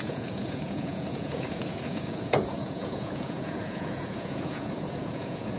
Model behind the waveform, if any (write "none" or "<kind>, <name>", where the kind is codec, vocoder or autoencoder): vocoder, Vocos